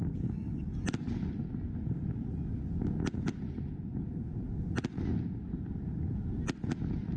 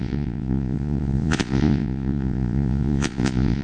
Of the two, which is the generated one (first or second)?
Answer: second